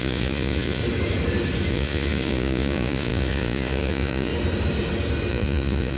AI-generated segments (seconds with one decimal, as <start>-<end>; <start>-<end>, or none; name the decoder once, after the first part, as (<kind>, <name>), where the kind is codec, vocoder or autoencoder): 0.0-0.8 (vocoder, Vocos); 1.7-4.3; 5.3-6.0